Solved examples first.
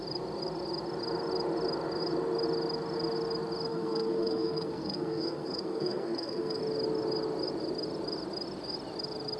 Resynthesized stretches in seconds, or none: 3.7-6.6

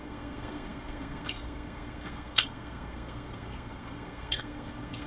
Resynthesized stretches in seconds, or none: 0.0-5.1

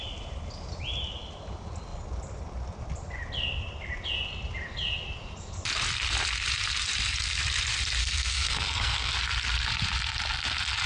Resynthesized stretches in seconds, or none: 8.0-9.1